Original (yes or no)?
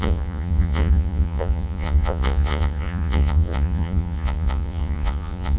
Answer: no